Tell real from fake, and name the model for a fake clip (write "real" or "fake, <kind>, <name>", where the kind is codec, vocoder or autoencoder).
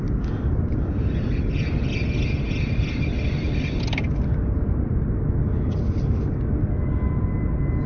real